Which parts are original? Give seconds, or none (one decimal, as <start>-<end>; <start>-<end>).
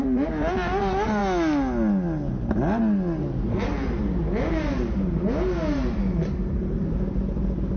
0.0-7.8